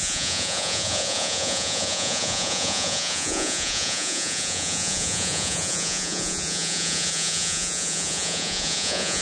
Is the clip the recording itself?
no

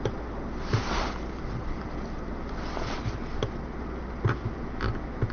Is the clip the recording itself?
yes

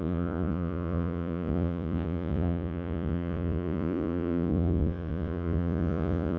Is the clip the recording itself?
no